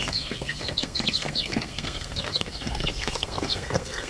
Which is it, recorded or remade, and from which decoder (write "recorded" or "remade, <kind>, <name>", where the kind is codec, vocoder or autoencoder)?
remade, codec, SNAC